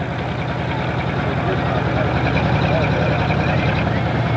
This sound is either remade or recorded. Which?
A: recorded